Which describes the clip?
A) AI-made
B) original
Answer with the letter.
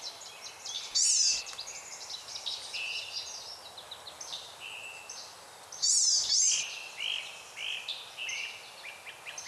B